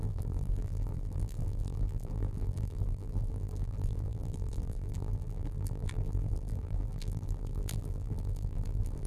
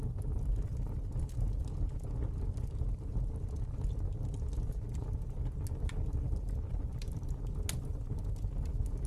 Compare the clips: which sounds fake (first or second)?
first